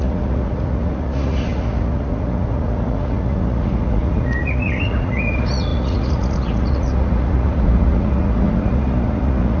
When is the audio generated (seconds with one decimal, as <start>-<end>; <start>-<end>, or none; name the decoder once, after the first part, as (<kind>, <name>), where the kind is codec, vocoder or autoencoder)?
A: 0.0-9.6 (vocoder, Vocos)